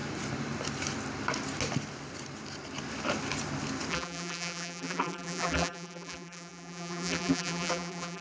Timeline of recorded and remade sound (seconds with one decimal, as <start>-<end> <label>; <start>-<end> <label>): 0.0-3.9 recorded; 3.9-8.2 remade